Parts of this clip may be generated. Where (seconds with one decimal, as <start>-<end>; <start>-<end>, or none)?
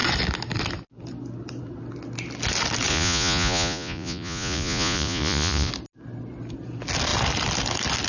2.9-5.7